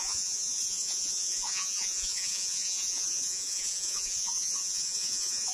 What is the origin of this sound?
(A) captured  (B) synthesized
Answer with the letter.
B